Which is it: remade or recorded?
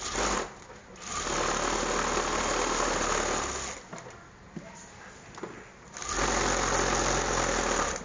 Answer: recorded